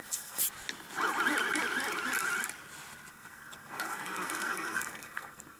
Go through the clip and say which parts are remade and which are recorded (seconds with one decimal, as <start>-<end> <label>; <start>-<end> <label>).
0.0-0.4 remade; 0.4-3.1 recorded; 3.1-5.6 remade